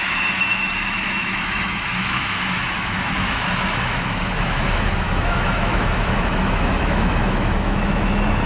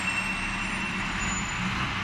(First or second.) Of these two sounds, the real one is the second